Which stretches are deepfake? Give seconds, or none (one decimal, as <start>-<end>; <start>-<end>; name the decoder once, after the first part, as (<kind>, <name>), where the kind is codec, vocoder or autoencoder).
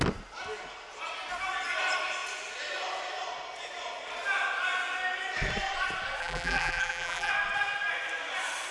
6.2-7.3 (vocoder, BigVGAN v2)